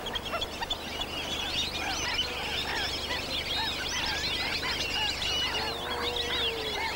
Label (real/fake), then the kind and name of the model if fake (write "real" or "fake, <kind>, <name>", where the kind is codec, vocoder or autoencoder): real